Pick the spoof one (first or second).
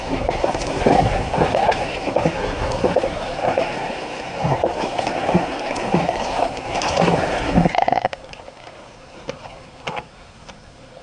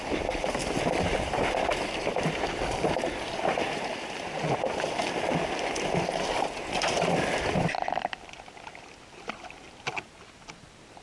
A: first